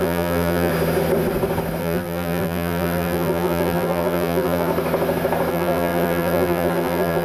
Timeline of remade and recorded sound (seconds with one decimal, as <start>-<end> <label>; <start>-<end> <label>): 0.0-0.7 remade; 0.7-1.8 recorded; 1.8-4.7 remade; 4.7-5.5 recorded; 5.5-7.2 remade